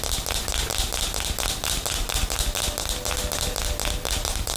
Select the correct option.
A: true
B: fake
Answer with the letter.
A